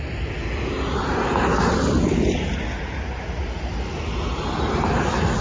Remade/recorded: recorded